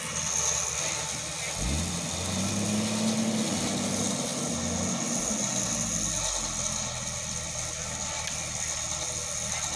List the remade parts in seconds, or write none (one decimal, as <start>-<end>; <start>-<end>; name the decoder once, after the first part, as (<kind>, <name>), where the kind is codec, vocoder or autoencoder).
none